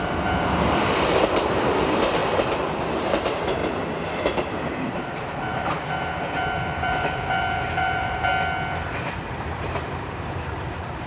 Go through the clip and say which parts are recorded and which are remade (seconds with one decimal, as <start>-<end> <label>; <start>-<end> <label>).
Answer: 0.0-2.2 remade; 2.2-2.8 recorded; 2.8-3.6 remade; 3.6-4.7 recorded; 4.7-8.3 remade; 8.3-9.3 recorded; 9.3-11.1 remade